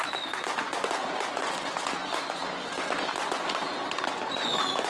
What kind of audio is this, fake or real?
fake